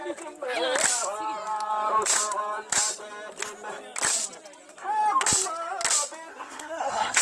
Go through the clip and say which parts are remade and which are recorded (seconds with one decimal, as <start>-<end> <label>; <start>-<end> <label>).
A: 0.0-6.3 recorded; 6.3-7.2 remade